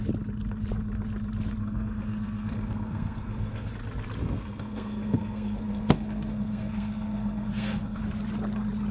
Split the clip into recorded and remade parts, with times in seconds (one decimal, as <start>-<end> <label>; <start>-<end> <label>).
0.0-1.6 recorded; 1.6-3.7 remade; 3.7-4.2 recorded; 4.2-8.0 remade; 8.0-8.9 recorded